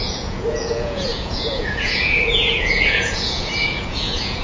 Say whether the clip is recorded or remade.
remade